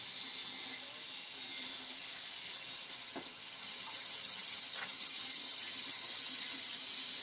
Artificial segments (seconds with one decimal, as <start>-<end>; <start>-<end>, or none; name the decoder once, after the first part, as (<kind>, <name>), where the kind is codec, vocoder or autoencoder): 3.0-6.8 (vocoder, HiFi-GAN)